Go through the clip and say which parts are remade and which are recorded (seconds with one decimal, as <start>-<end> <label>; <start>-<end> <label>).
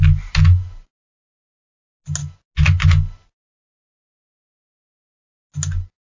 0.0-6.2 recorded